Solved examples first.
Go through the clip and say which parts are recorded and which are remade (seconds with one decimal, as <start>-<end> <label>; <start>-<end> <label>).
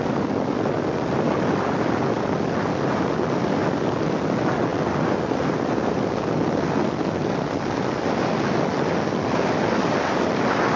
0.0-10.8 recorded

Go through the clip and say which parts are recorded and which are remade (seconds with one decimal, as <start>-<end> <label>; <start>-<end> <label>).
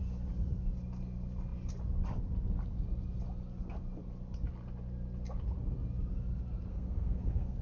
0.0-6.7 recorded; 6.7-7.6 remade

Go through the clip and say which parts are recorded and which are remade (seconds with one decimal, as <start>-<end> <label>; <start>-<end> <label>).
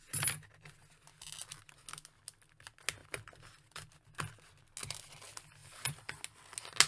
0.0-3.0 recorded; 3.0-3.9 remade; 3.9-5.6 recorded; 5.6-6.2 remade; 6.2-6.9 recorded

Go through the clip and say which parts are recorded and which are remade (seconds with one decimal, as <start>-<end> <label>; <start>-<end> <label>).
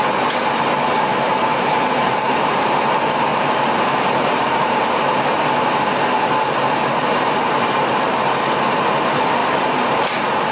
0.0-1.1 recorded; 1.1-2.8 remade; 2.8-3.3 recorded; 3.3-5.2 remade; 5.2-6.8 recorded; 6.8-8.4 remade; 8.4-9.4 recorded; 9.4-10.0 remade; 10.0-10.5 recorded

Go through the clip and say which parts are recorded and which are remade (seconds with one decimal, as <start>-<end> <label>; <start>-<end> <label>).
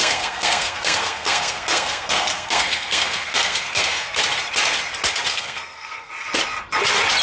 0.0-4.2 remade; 4.2-5.3 recorded; 5.3-6.1 remade; 6.1-7.2 recorded